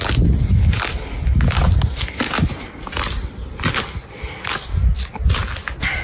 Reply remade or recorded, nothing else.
recorded